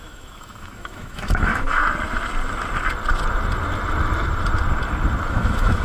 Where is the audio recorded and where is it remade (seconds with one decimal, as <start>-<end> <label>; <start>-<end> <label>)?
0.0-1.8 remade; 1.8-5.3 recorded; 5.3-5.8 remade